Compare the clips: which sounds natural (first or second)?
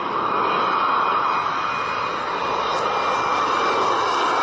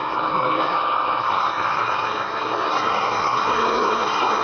first